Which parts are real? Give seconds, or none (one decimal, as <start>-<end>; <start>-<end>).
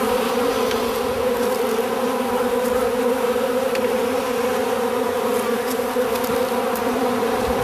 0.5-5.1